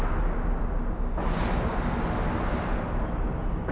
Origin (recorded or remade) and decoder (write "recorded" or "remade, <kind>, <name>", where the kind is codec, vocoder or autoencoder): recorded